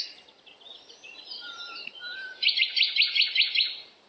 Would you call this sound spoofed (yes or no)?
no